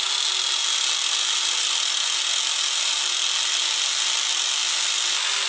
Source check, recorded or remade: recorded